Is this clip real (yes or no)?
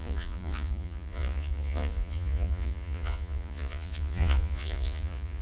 no